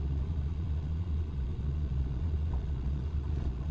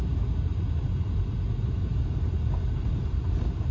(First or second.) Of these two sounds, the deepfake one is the first